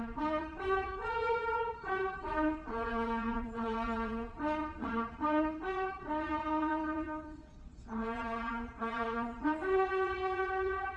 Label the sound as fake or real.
fake